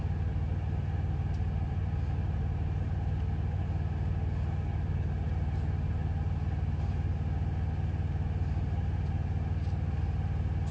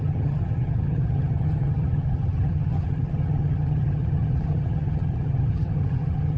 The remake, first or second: second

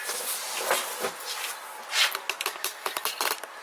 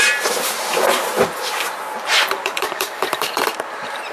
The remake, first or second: second